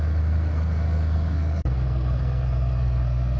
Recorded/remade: remade